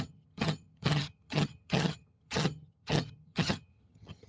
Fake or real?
fake